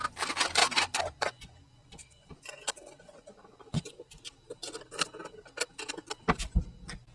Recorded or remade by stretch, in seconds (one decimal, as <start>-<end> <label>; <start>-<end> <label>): 0.0-0.6 recorded; 0.6-4.2 remade; 4.2-7.1 recorded

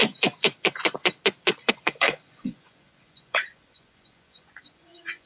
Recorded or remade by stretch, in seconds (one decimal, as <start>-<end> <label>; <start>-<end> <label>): 0.0-1.7 recorded; 1.7-5.3 remade

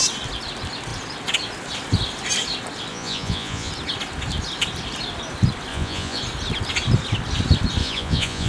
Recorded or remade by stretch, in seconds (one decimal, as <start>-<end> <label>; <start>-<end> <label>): 0.0-2.9 recorded; 2.9-3.7 remade; 3.7-5.7 recorded; 5.7-6.2 remade; 6.2-7.8 recorded; 7.8-8.5 remade